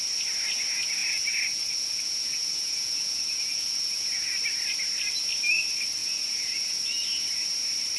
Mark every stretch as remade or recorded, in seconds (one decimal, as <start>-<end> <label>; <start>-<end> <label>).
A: 0.0-1.0 recorded; 1.0-4.3 remade; 4.3-6.0 recorded; 6.0-6.8 remade; 6.8-8.0 recorded